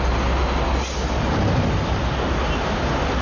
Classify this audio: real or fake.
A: real